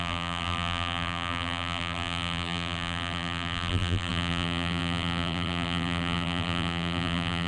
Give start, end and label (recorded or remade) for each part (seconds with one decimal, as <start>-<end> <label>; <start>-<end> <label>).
0.0-7.5 remade

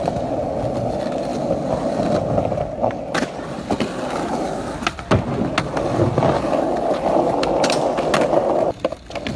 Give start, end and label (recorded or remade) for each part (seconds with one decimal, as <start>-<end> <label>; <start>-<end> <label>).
0.0-9.4 recorded

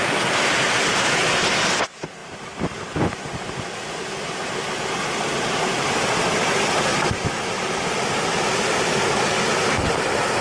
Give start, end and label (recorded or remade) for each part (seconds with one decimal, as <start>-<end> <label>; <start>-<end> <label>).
0.0-2.2 recorded; 2.2-3.2 remade; 3.2-10.4 recorded

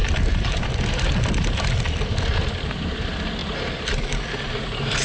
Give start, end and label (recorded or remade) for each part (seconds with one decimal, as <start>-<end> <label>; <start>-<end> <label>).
0.0-3.0 remade; 3.0-3.4 recorded; 3.4-4.3 remade; 4.3-5.0 recorded

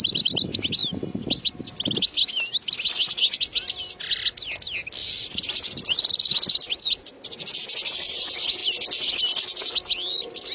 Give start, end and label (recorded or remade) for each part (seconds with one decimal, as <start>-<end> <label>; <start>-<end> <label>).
0.0-5.0 recorded; 5.0-6.1 remade; 6.1-10.5 recorded